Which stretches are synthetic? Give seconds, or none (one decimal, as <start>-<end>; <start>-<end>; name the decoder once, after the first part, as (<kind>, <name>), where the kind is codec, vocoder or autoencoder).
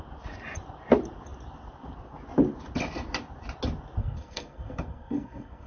4.0-5.7 (codec, SNAC)